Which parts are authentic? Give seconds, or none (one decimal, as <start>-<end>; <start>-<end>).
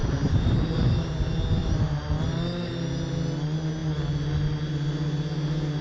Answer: 1.1-1.6; 2.7-5.8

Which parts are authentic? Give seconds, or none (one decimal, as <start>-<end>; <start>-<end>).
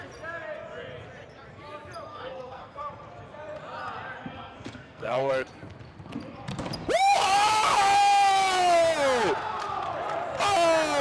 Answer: 0.0-2.1; 2.9-4.3; 5.3-11.0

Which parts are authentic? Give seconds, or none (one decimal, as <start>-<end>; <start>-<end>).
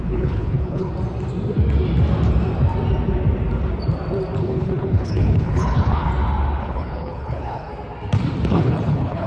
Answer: 0.9-4.4; 6.1-6.6; 7.7-8.5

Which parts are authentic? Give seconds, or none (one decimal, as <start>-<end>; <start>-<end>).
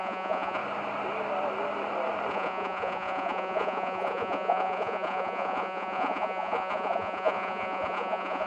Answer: 0.6-2.3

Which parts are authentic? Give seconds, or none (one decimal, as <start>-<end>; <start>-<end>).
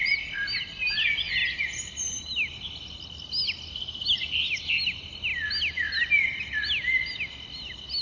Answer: 0.0-8.0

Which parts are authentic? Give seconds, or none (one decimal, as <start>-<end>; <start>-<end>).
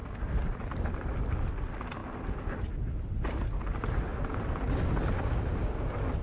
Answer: 1.5-4.1; 4.8-6.2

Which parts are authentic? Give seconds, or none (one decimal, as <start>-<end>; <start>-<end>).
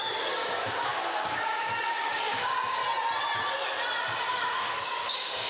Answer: 2.8-4.3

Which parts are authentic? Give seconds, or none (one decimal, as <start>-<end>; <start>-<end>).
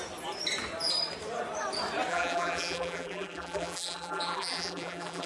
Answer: 0.0-2.1